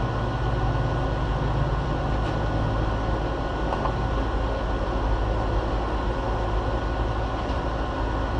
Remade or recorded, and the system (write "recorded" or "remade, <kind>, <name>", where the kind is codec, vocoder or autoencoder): recorded